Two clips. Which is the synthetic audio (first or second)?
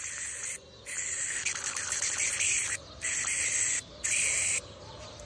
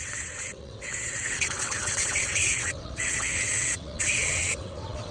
second